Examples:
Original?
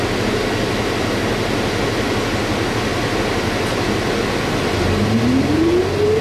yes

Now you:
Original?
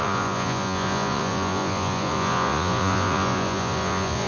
no